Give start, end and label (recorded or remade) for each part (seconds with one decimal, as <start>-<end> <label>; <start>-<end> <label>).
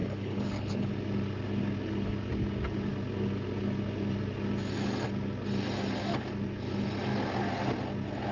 0.0-0.9 remade; 0.9-8.3 recorded